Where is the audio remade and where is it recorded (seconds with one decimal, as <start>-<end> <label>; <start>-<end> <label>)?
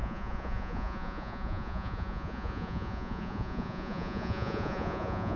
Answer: 0.0-5.4 remade